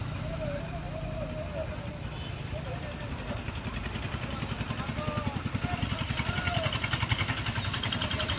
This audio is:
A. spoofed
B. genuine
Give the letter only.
B